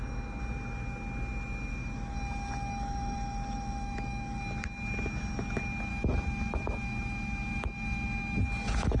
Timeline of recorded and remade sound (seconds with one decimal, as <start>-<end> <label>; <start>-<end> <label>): 0.0-1.7 recorded; 1.7-4.4 remade; 4.4-5.9 recorded; 5.9-8.4 remade; 8.4-9.0 recorded